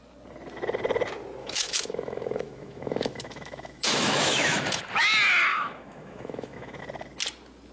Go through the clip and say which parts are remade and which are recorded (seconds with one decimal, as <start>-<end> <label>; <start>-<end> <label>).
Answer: 0.0-1.4 recorded; 1.4-4.8 remade; 4.8-5.5 recorded; 5.5-6.8 remade; 6.8-7.7 recorded